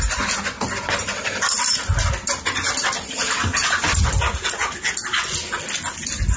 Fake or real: real